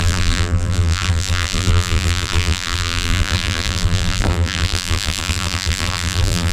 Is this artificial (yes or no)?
yes